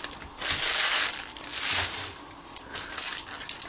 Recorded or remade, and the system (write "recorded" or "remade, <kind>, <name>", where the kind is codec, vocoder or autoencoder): recorded